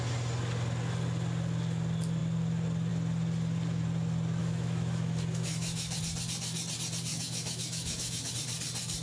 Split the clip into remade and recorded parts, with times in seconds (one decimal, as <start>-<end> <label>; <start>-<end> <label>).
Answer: 0.0-4.4 recorded; 4.4-6.0 remade; 6.0-7.1 recorded; 7.1-8.3 remade; 8.3-9.0 recorded